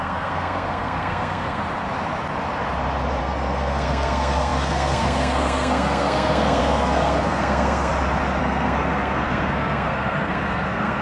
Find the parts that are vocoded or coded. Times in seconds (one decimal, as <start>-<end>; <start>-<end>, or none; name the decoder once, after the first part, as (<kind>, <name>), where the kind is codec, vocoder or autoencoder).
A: 0.0-1.6 (codec, SNAC); 3.2-7.9; 8.4-11.0